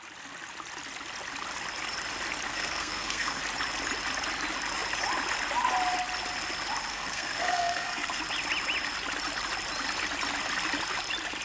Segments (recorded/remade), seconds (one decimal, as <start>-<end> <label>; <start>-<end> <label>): 0.0-2.5 recorded; 2.5-3.4 remade; 3.4-6.9 recorded; 6.9-8.2 remade; 8.2-11.4 recorded